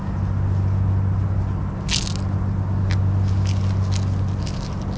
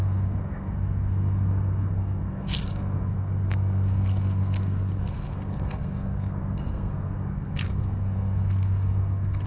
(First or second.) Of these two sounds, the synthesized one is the second